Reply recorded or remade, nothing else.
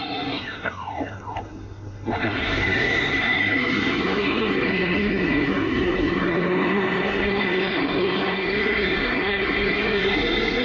remade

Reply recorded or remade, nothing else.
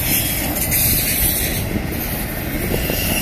recorded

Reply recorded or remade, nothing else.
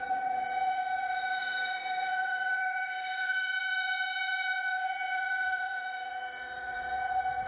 remade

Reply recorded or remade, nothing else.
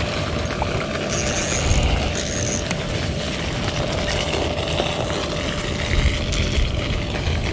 recorded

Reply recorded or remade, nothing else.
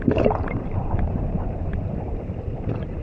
recorded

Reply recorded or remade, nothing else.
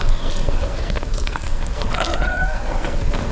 remade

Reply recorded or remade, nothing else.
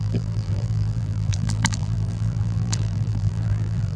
remade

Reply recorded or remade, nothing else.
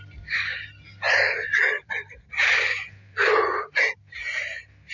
recorded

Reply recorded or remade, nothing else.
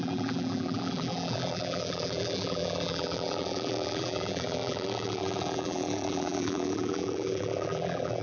remade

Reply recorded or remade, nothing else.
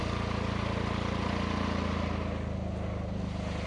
recorded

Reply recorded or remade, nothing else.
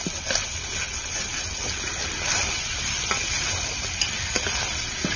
recorded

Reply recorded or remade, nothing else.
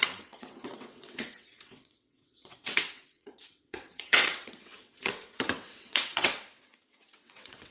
remade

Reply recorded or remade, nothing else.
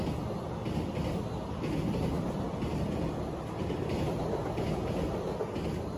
recorded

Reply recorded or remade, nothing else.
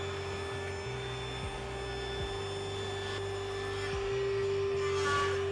recorded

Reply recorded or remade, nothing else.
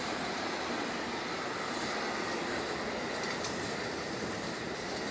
recorded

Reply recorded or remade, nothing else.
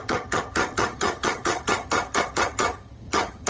remade